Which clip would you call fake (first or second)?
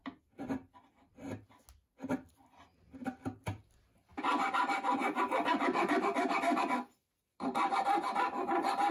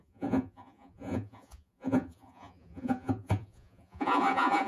second